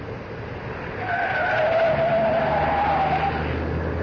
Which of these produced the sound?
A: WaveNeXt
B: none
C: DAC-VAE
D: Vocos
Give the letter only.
B